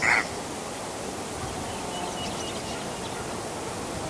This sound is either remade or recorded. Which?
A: recorded